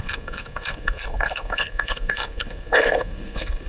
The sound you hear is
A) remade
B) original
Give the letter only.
A